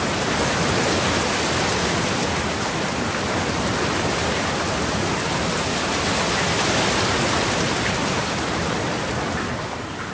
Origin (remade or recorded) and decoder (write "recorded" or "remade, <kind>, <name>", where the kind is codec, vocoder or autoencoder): recorded